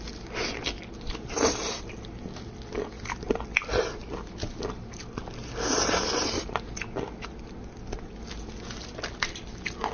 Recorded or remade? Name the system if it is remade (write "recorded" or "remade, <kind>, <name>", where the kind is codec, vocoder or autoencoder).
recorded